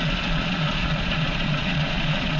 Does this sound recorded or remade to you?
remade